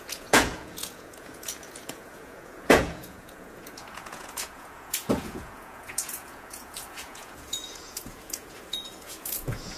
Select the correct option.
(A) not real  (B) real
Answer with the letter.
A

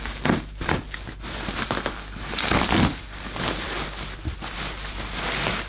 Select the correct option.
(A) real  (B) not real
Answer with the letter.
A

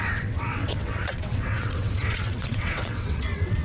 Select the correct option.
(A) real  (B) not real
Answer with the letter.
B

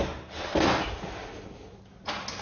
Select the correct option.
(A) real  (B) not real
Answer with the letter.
A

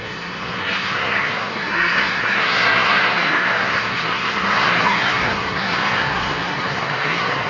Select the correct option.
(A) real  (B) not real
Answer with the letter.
B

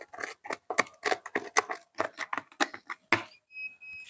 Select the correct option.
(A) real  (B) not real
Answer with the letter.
A